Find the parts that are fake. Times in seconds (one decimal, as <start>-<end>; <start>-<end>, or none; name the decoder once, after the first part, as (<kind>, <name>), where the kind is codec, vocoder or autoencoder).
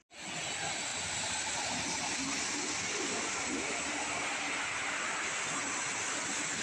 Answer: none